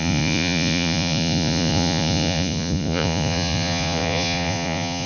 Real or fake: fake